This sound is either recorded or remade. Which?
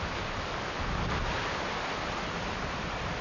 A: recorded